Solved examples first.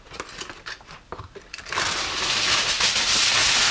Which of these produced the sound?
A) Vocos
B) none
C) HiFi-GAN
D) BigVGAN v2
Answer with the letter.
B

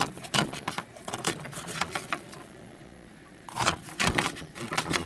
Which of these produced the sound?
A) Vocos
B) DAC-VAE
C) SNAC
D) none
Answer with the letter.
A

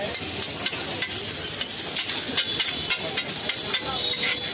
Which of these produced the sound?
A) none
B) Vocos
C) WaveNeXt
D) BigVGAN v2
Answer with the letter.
A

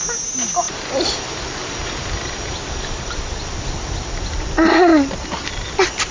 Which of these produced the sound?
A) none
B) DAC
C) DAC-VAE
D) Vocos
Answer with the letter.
A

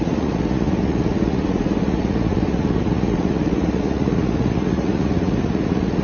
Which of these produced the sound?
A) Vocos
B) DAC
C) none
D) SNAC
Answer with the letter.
A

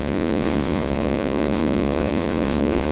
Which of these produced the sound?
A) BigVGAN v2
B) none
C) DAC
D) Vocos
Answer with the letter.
D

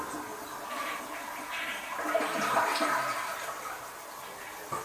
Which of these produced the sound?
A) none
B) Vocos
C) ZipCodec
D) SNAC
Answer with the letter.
A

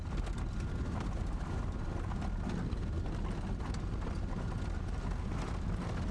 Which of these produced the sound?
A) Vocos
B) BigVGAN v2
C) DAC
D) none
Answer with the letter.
D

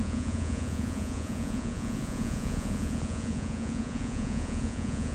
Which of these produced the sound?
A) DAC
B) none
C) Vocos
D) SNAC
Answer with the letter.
C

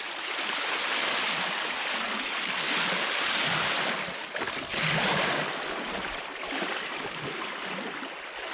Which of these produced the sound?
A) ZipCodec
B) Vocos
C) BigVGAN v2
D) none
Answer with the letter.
D